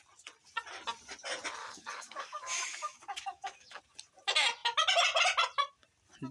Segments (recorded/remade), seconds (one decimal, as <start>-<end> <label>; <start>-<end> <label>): 0.0-1.6 recorded; 1.6-3.8 remade; 3.8-6.3 recorded